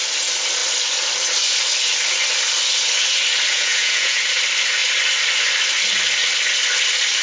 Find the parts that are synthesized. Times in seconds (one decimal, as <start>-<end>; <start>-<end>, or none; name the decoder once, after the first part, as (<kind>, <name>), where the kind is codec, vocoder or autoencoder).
3.5-4.2 (vocoder, Vocos)